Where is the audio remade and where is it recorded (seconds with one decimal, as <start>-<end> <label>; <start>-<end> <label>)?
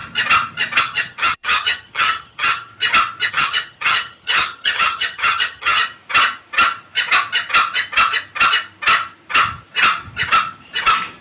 0.0-0.8 recorded; 0.8-2.7 remade; 2.7-3.3 recorded; 3.3-5.8 remade; 5.8-11.2 recorded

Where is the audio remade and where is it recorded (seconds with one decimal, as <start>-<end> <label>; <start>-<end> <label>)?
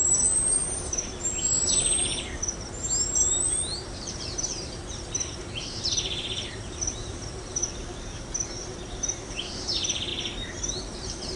0.0-7.6 remade; 7.6-9.3 recorded; 9.3-10.1 remade; 10.1-10.7 recorded; 10.7-11.4 remade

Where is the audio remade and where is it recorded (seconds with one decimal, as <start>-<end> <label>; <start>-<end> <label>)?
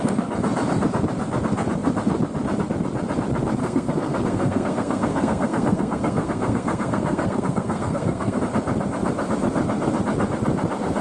0.0-3.6 recorded; 3.6-8.4 remade; 8.4-11.0 recorded